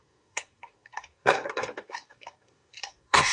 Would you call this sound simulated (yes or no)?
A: yes